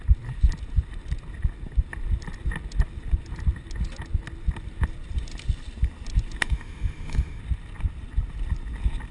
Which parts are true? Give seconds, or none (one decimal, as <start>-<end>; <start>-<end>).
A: 0.0-6.4; 7.4-9.1